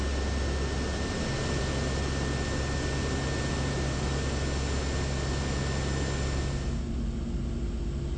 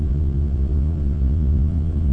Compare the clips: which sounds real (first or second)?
first